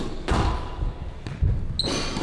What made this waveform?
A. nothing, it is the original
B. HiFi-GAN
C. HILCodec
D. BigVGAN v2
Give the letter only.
A